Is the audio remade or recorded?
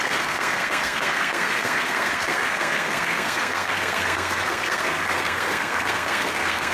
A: remade